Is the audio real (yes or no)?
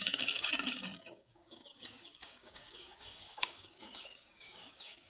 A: no